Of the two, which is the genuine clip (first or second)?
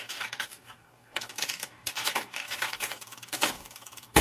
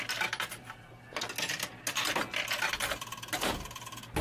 second